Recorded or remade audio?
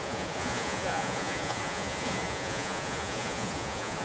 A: remade